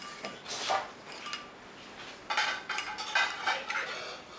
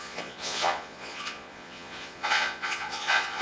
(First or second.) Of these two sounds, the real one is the first